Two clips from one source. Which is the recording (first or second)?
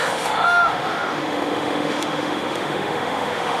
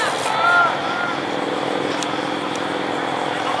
second